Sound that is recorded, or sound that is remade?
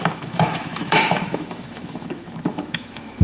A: remade